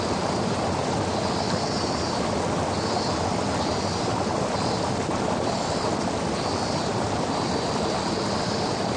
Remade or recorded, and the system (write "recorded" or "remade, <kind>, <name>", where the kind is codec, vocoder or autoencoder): recorded